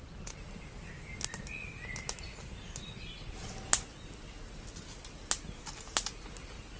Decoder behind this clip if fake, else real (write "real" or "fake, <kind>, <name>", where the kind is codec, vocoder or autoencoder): real